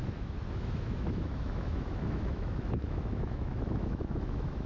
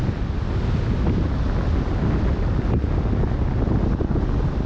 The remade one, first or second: first